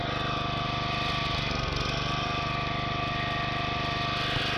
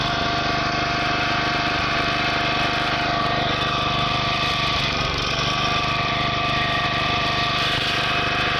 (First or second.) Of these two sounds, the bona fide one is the first